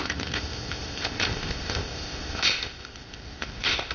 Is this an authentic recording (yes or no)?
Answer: no